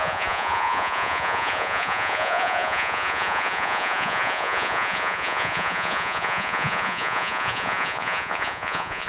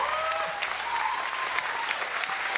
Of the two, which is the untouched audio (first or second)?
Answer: second